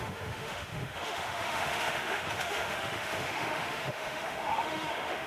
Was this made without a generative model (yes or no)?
no